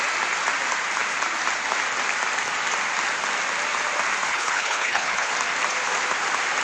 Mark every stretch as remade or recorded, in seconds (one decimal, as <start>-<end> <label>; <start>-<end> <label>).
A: 0.0-4.3 recorded; 4.3-5.3 remade; 5.3-6.6 recorded